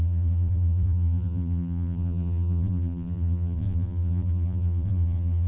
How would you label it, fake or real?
fake